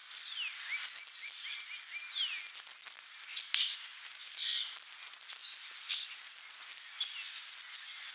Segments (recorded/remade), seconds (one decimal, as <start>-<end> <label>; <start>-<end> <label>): 0.0-8.1 recorded